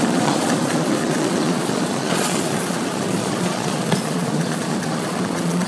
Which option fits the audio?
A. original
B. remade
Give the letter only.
B